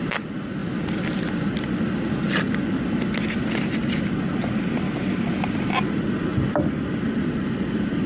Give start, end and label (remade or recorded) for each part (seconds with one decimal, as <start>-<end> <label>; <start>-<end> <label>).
0.0-8.1 recorded